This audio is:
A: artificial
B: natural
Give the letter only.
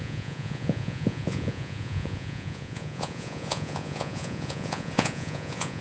A